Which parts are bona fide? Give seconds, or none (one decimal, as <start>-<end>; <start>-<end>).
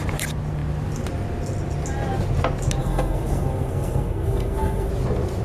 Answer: 0.0-2.8; 4.9-5.4